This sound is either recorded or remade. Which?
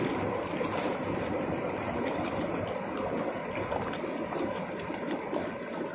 recorded